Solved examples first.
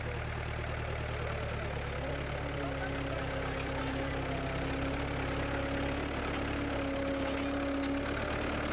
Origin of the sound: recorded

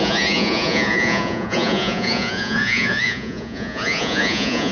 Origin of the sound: remade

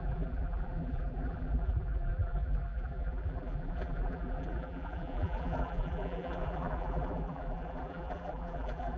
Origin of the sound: remade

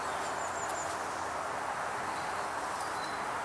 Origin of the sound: recorded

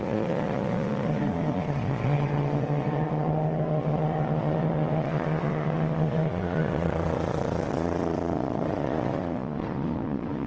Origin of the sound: remade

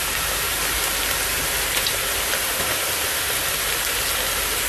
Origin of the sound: recorded